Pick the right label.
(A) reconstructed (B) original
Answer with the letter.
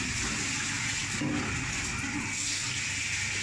B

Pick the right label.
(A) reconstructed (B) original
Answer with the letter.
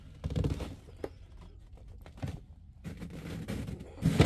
B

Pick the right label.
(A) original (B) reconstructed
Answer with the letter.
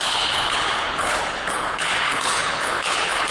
B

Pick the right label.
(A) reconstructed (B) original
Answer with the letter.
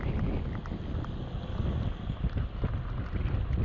B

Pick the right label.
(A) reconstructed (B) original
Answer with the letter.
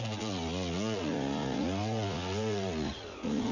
A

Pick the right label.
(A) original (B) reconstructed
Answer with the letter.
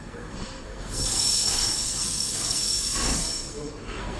B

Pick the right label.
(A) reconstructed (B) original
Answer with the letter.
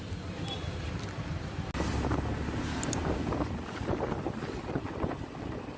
B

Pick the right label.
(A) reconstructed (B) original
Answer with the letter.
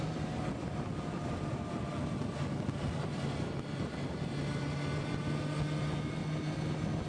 B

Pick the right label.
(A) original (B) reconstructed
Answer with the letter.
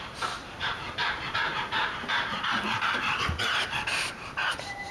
B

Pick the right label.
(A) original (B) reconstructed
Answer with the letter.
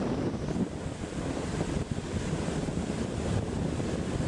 B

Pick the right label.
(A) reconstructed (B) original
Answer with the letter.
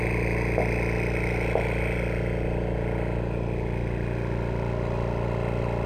B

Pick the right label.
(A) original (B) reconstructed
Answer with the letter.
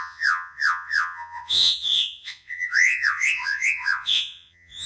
B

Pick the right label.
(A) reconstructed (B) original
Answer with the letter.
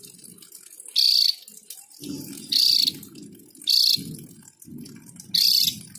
B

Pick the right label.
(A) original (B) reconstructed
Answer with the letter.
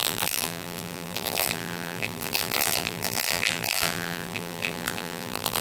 B